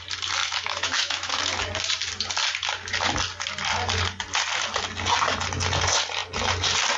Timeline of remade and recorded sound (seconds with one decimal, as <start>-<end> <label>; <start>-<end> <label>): 0.0-0.4 recorded; 0.4-1.7 remade; 1.7-7.0 recorded